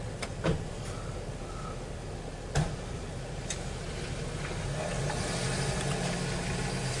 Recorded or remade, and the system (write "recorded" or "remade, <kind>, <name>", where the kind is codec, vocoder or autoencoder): recorded